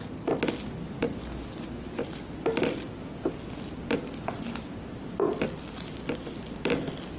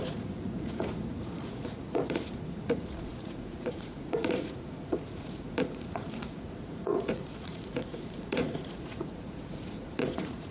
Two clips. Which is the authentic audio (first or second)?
first